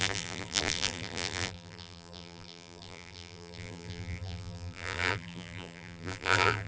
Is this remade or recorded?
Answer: remade